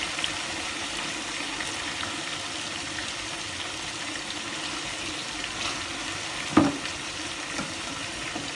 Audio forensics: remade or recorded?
recorded